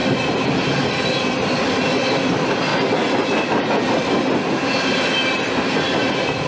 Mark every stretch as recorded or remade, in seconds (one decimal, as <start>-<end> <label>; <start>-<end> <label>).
0.0-6.5 recorded